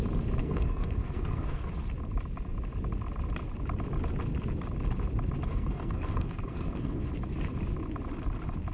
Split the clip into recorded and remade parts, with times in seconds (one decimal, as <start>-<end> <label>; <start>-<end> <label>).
0.0-0.4 recorded; 0.4-1.7 remade; 1.7-5.5 recorded; 5.5-7.1 remade; 7.1-8.7 recorded

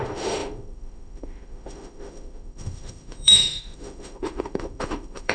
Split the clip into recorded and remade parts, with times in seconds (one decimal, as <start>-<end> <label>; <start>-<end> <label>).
0.0-5.3 remade

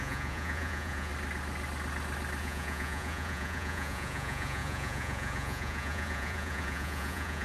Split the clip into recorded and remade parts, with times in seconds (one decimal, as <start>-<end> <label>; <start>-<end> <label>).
0.0-1.1 remade; 1.1-2.4 recorded; 2.4-7.4 remade

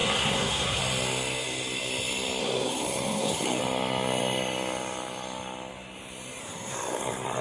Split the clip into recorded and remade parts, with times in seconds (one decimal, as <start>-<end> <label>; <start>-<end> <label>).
0.0-0.8 remade; 0.8-2.4 recorded; 2.4-3.6 remade; 3.6-6.4 recorded; 6.4-7.4 remade

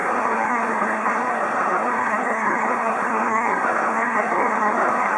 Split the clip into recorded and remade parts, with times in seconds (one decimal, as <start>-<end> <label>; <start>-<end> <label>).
0.0-5.2 remade

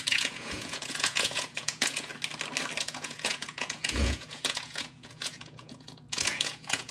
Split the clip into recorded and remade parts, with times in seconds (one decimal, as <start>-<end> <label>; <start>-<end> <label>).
0.0-2.1 remade; 2.1-2.8 recorded; 2.8-6.9 remade

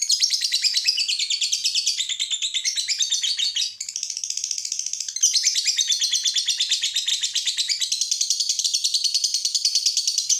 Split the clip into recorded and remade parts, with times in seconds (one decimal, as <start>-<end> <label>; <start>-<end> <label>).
0.0-10.4 recorded